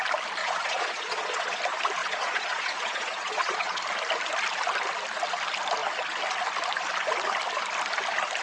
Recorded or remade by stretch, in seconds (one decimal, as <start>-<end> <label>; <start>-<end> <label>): 0.0-0.4 recorded; 0.4-1.6 remade; 1.6-2.0 recorded; 2.0-3.8 remade; 3.8-8.4 recorded